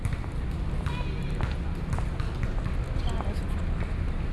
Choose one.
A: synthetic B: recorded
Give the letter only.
B